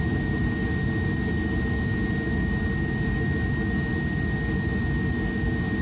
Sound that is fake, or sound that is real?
real